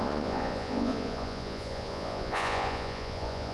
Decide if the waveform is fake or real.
fake